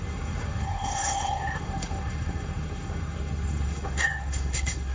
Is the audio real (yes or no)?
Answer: no